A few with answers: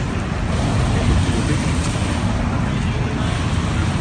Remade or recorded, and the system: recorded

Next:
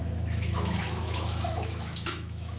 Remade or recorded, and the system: remade, autoencoder, DAC-VAE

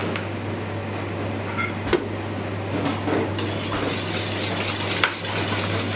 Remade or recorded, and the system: recorded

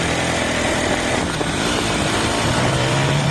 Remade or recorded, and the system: remade, vocoder, BigVGAN v2